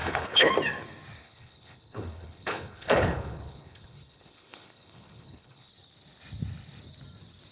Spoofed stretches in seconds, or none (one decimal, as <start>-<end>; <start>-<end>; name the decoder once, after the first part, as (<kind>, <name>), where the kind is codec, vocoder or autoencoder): 0.0-0.5 (codec, HILCodec); 1.2-5.7